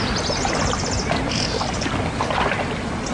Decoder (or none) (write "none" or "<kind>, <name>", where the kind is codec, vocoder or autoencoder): none